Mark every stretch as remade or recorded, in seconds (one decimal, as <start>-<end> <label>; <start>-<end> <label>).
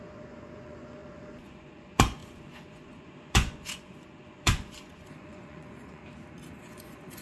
0.0-6.0 remade; 6.0-6.6 recorded; 6.6-7.2 remade